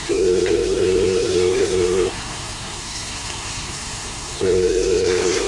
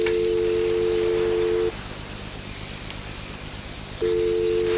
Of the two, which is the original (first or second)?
second